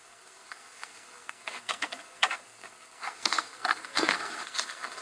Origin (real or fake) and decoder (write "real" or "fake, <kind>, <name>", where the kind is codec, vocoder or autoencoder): fake, codec, SNAC